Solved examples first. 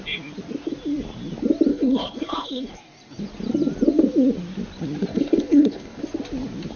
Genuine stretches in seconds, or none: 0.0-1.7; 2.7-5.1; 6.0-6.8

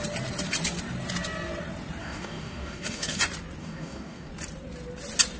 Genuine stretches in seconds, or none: 0.0-2.0; 3.2-3.6; 4.3-5.4

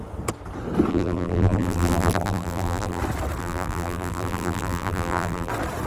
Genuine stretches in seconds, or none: 0.0-0.9; 3.0-3.4; 5.5-5.9